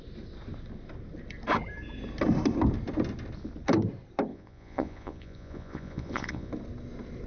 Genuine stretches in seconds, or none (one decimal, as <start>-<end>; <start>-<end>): 0.0-4.3; 6.5-7.3